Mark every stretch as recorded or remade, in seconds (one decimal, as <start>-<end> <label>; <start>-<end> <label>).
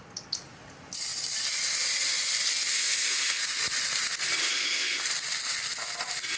0.0-2.7 recorded; 2.7-3.4 remade; 3.4-4.4 recorded; 4.4-5.0 remade; 5.0-6.4 recorded